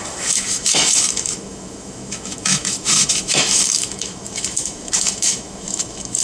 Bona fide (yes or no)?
no